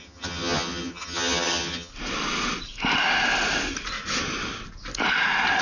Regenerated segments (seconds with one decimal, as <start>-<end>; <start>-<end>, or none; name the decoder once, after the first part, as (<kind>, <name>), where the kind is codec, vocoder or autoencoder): 0.0-1.9 (vocoder, HiFi-GAN)

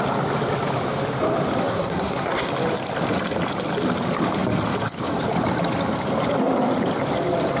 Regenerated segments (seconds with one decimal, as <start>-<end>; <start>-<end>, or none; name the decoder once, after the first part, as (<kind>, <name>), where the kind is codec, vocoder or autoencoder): 1.6-2.5 (codec, SNAC)